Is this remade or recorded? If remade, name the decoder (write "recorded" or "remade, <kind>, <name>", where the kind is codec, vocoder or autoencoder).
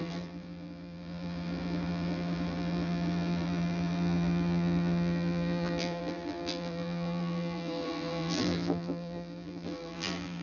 remade, vocoder, BigVGAN v2